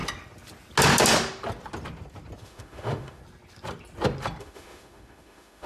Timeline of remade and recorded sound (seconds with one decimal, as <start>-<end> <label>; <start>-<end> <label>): 0.0-2.4 recorded; 2.4-3.2 remade; 3.2-4.4 recorded; 4.4-5.7 remade